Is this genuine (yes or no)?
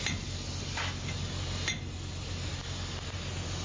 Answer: yes